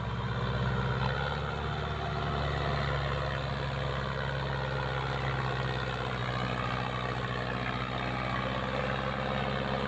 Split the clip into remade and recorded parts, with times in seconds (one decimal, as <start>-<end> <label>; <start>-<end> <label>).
0.0-9.9 recorded